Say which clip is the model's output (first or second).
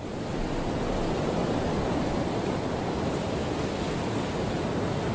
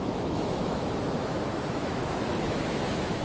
second